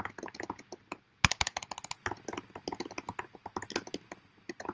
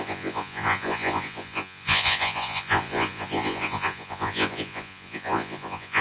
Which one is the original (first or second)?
first